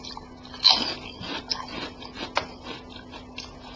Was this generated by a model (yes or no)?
no